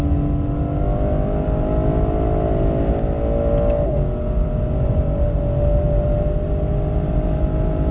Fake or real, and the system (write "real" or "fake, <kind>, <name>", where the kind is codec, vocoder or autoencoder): real